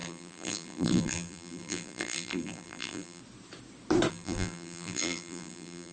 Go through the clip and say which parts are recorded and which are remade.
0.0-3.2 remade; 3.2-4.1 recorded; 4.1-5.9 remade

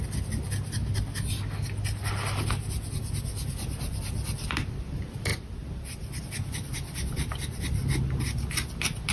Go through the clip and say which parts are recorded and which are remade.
0.0-0.8 remade; 0.8-3.5 recorded; 3.5-9.1 remade

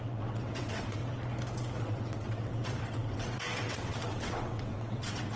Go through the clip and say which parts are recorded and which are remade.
0.0-1.0 remade; 1.0-1.8 recorded; 1.8-5.4 remade